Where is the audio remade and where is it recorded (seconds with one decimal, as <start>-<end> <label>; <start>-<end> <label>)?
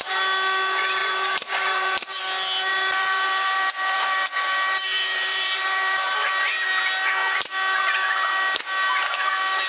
0.0-1.0 recorded; 1.0-2.2 remade; 2.2-2.7 recorded; 2.7-6.3 remade; 6.3-9.7 recorded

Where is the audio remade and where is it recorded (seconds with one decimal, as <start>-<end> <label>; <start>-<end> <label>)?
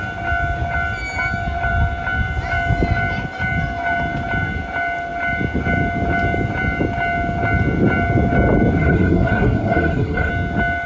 0.0-8.8 recorded; 8.8-10.3 remade; 10.3-10.9 recorded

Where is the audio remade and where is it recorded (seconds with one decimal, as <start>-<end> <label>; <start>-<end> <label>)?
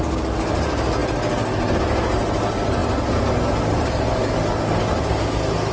0.0-5.7 recorded